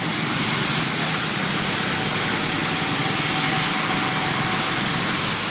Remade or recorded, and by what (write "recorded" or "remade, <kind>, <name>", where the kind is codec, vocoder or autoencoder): recorded